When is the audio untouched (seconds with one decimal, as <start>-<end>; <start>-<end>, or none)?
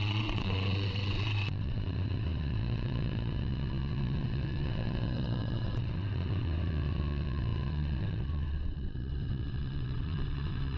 none